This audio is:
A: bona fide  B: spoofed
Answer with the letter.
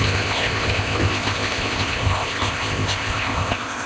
B